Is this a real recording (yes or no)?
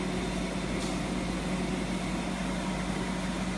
yes